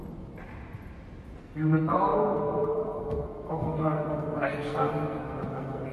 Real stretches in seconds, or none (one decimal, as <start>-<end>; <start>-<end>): 0.0-1.4